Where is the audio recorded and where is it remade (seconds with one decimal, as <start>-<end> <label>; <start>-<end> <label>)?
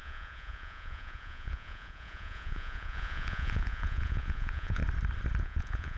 0.0-4.8 remade; 4.8-5.4 recorded; 5.4-6.0 remade